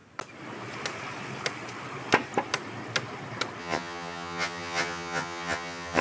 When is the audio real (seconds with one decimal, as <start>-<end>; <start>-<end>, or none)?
0.0-3.6

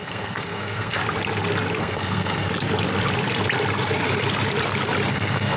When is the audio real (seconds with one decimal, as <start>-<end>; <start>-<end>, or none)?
1.0-1.8; 2.5-5.1

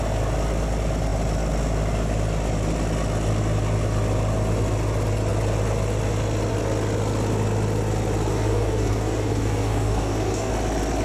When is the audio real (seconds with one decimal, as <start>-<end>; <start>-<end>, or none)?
0.0-8.3; 10.5-11.0

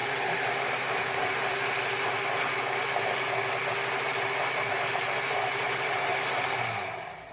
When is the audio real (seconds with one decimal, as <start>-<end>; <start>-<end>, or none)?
1.3-4.1; 6.1-7.3